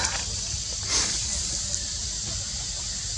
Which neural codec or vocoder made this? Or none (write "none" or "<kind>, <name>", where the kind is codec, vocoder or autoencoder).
none